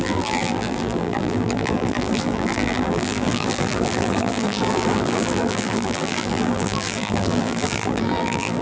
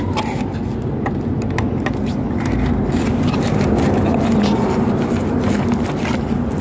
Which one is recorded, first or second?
second